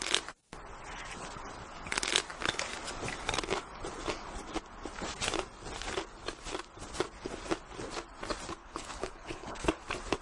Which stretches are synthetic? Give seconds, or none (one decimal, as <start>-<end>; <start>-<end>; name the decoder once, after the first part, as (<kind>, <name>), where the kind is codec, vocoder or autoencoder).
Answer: 8.6-9.7 (codec, HILCodec)